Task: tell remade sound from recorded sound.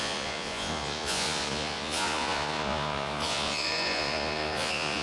remade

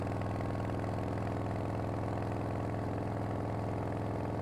recorded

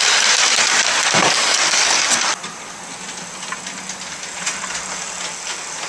recorded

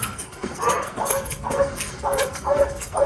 remade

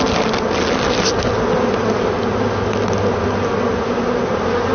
recorded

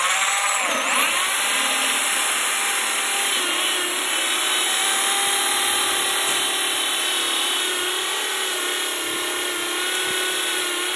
recorded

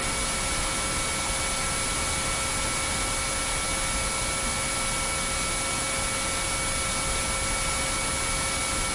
recorded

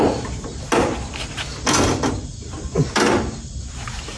recorded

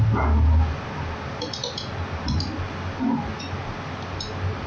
recorded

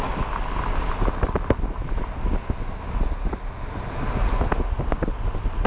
recorded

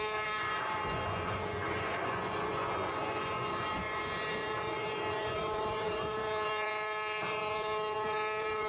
remade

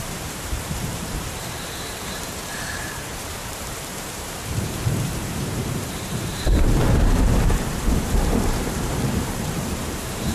remade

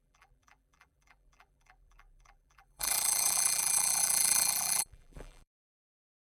remade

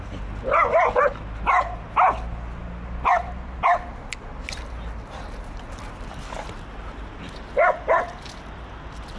recorded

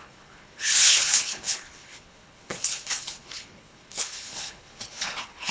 remade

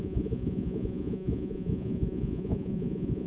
remade